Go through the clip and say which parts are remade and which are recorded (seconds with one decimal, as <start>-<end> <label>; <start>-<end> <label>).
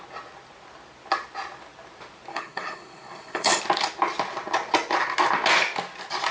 0.0-2.3 recorded; 2.3-3.6 remade; 3.6-6.3 recorded